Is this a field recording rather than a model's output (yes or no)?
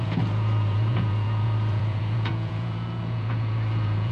no